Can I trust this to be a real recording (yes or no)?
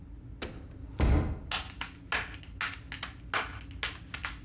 yes